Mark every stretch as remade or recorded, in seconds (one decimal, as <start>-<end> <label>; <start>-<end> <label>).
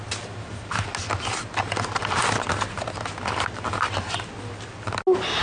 0.0-5.4 recorded